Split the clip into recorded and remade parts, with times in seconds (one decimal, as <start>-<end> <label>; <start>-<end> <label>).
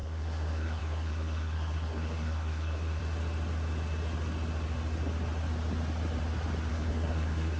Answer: 0.0-3.0 remade; 3.0-6.7 recorded; 6.7-7.6 remade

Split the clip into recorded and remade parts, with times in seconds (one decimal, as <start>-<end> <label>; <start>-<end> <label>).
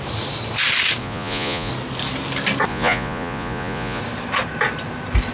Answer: 0.0-1.0 recorded; 1.0-1.7 remade; 1.7-2.7 recorded; 2.7-4.0 remade; 4.0-5.3 recorded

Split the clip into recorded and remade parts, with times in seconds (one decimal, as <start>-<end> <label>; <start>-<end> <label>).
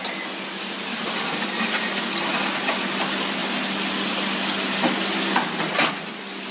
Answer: 0.0-6.5 recorded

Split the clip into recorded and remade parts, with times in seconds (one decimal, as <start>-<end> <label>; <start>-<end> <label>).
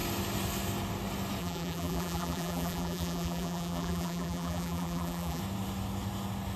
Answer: 0.0-1.4 recorded; 1.4-5.4 remade; 5.4-6.6 recorded